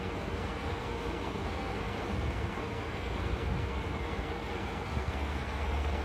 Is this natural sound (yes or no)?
no